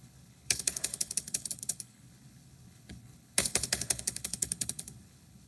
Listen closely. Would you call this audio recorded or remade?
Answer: remade